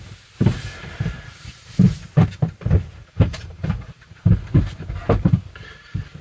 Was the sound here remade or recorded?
remade